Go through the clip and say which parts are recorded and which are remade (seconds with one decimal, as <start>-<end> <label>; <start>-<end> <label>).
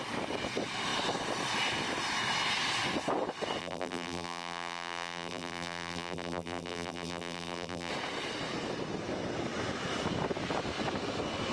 0.0-3.6 recorded; 3.6-7.9 remade; 7.9-11.5 recorded